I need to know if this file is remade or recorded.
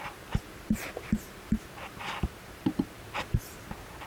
remade